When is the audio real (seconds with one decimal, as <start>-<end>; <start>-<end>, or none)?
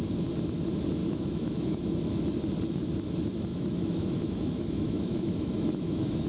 0.0-1.0; 2.2-3.5